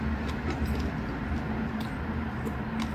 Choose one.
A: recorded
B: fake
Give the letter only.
A